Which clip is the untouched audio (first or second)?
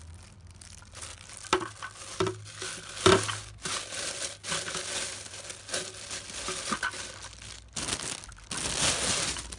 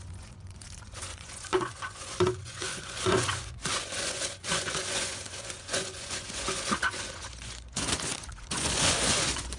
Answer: first